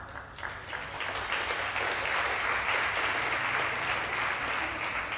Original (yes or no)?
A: yes